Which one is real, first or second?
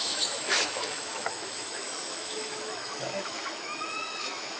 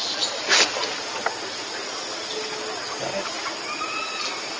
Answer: second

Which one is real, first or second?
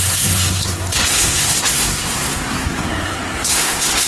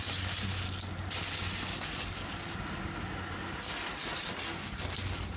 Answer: second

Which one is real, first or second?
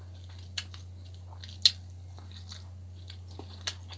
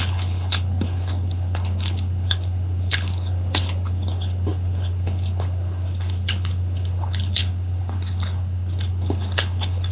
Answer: first